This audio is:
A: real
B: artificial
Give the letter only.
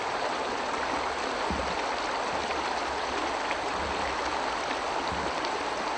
A